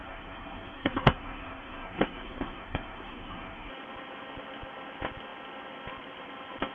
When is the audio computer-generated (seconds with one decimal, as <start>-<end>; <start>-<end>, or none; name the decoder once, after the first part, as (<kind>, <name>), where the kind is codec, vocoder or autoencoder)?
0.0-3.7 (codec, SNAC)